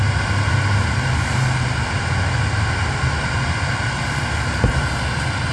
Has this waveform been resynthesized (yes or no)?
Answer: no